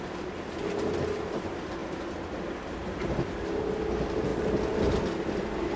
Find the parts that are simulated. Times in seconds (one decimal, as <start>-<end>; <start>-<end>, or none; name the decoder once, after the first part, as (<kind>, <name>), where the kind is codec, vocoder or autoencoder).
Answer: none